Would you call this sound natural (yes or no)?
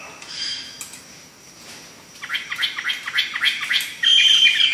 yes